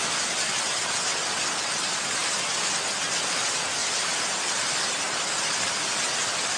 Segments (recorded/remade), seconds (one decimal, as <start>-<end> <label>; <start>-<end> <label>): 0.0-6.6 recorded